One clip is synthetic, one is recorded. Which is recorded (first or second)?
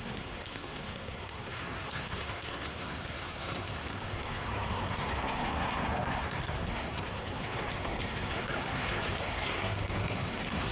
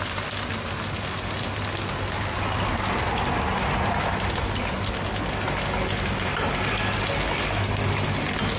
second